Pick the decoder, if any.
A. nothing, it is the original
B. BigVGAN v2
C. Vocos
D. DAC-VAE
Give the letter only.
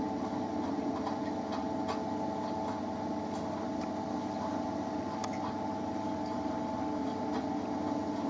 A